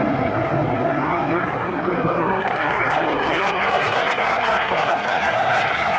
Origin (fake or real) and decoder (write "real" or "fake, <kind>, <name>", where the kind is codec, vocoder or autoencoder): fake, codec, SNAC